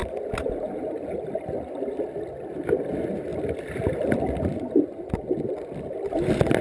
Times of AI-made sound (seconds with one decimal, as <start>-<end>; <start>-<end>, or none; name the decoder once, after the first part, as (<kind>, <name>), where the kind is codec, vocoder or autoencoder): none